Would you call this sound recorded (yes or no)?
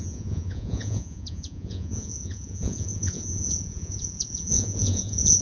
no